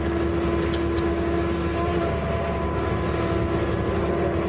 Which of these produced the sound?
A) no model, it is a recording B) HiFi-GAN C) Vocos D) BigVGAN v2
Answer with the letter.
A